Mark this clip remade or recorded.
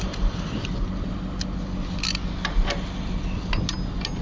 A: recorded